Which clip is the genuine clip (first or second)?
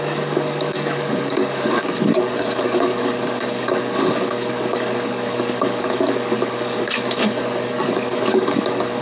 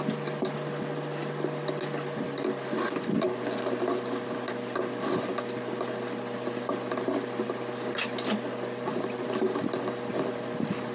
second